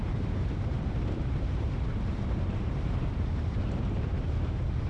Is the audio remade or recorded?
remade